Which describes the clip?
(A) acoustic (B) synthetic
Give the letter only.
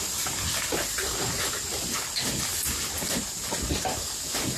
A